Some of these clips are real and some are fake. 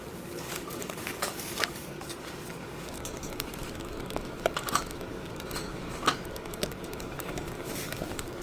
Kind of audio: fake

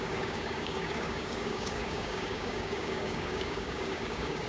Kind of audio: fake